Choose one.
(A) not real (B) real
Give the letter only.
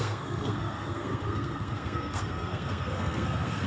A